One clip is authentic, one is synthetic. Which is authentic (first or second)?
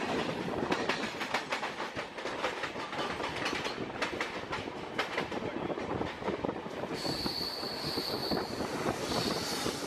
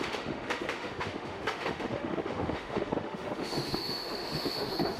first